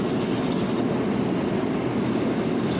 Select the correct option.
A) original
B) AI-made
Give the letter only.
A